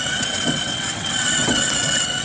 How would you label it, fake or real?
fake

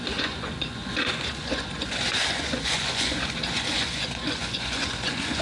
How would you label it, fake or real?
fake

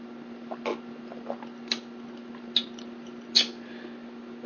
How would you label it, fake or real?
real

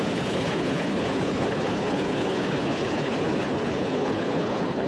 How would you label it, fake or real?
fake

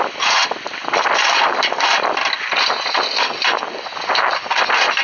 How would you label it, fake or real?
real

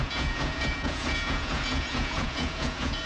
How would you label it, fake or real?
fake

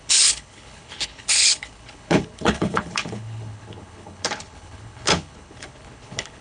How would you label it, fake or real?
fake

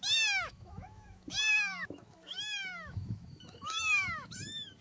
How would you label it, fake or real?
fake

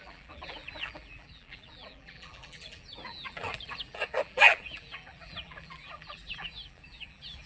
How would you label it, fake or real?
fake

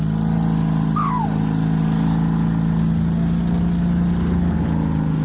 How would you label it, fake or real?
real